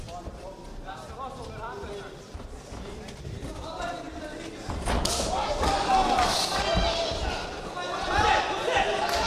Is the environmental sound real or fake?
real